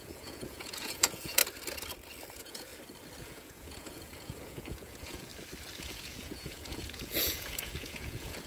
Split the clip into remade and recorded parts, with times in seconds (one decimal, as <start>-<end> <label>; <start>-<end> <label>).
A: 0.0-1.4 remade; 1.4-2.3 recorded; 2.3-2.7 remade; 2.7-3.2 recorded; 3.2-5.3 remade; 5.3-5.8 recorded; 5.8-8.5 remade